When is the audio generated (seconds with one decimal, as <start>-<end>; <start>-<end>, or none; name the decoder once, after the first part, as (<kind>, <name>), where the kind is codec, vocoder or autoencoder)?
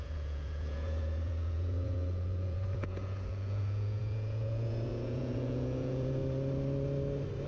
0.0-6.2 (vocoder, Vocos)